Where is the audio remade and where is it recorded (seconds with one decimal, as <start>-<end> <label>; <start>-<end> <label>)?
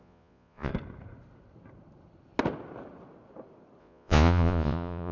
0.0-0.7 remade; 0.7-3.8 recorded; 3.8-5.1 remade